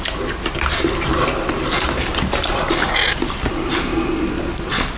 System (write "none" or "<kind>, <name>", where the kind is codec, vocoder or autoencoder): none